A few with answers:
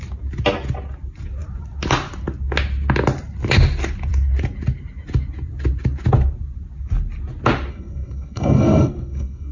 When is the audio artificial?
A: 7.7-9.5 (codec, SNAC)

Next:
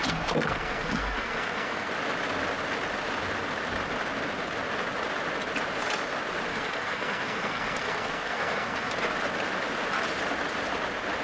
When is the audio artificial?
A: 0.0-1.9 (codec, SNAC); 6.5-8.9